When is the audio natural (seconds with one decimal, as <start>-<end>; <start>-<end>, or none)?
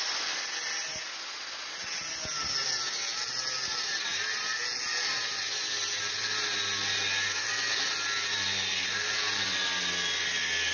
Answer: 0.0-10.7